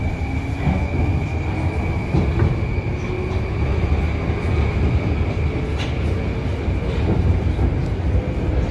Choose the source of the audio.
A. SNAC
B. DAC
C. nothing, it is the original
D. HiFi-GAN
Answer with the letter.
C